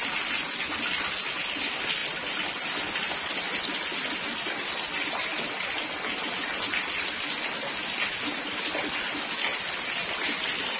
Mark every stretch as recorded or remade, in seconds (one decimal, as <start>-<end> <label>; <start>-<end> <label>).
0.0-10.8 recorded